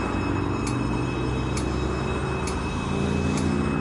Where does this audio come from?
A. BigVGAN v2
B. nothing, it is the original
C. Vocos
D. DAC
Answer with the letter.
B